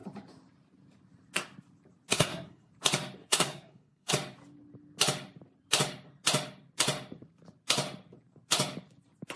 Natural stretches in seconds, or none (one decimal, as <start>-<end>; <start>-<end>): 0.0-2.1; 2.7-3.2; 4.1-9.4